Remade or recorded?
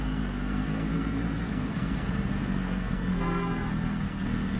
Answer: remade